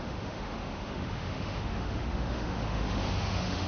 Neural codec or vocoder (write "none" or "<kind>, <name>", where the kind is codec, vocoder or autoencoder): autoencoder, DAC-VAE